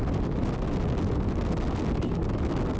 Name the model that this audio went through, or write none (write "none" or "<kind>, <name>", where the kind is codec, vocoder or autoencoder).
none